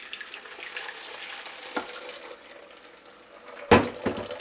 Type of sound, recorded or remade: recorded